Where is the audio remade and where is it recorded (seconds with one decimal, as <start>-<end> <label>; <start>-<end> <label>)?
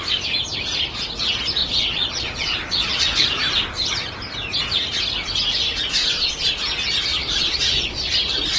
0.0-1.6 recorded; 1.6-3.3 remade; 3.3-6.0 recorded; 6.0-6.5 remade; 6.5-7.1 recorded; 7.1-8.1 remade; 8.1-8.6 recorded